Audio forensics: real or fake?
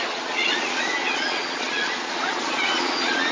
fake